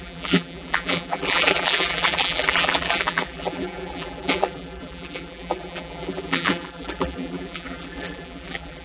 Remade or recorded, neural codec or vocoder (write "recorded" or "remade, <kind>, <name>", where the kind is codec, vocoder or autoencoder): remade, vocoder, BigVGAN v2